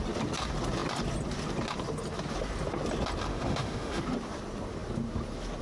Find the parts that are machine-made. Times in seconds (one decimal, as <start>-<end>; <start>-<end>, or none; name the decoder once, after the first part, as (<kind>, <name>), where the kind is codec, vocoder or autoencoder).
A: 3.3-4.0 (autoencoder, DAC-VAE)